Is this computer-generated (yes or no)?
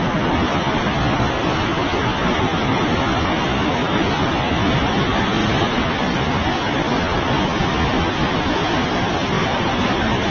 no